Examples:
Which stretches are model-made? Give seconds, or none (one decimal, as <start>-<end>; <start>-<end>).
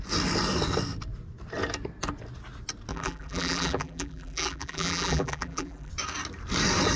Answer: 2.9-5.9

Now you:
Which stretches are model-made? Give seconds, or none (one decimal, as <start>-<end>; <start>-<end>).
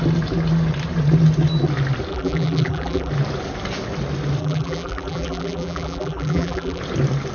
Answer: 2.1-3.1; 4.4-6.8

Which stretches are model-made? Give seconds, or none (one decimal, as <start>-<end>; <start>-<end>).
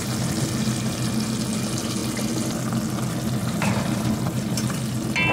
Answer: 3.4-4.8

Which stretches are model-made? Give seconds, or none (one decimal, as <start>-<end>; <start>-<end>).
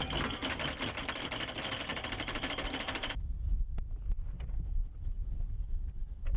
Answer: 1.9-3.2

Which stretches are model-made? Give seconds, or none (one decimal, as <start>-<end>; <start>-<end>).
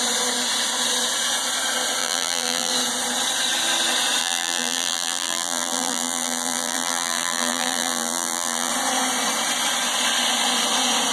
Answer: 2.0-2.7; 4.2-8.7